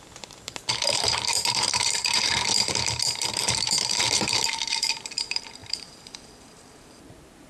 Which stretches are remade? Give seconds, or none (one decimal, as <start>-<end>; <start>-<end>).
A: 0.0-7.5